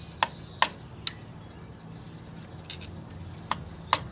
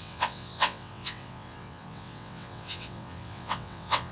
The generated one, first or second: second